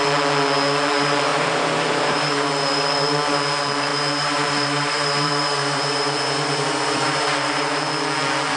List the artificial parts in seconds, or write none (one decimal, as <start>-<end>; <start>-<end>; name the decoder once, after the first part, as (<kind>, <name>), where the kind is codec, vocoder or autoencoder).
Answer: 1.3-2.5 (vocoder, BigVGAN v2); 3.9-7.9